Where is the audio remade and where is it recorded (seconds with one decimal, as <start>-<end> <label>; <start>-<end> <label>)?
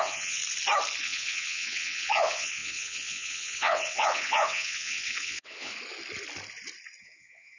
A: 0.0-0.4 remade; 0.4-1.0 recorded; 1.0-5.7 remade; 5.7-7.0 recorded; 7.0-7.6 remade